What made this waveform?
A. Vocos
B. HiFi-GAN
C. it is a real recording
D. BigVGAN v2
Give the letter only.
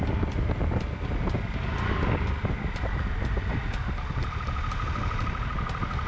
C